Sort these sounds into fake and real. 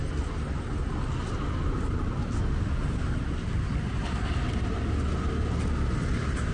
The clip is real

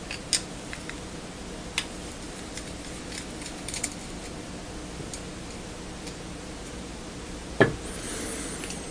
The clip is real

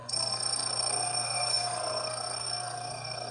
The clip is fake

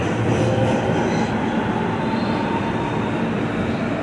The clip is real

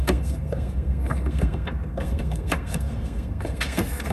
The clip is fake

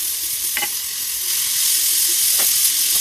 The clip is real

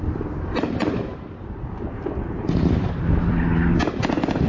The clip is fake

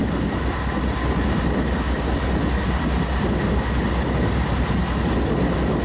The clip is real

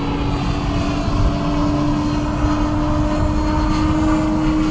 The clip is real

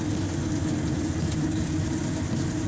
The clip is real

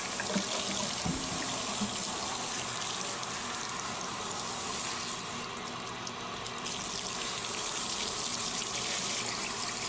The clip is real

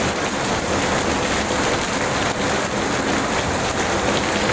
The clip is real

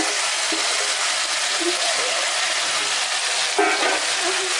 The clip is real